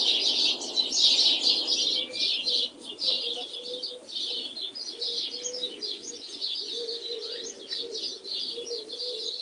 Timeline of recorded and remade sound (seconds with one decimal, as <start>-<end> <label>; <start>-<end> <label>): 0.0-5.7 recorded; 5.7-7.5 remade; 7.5-9.4 recorded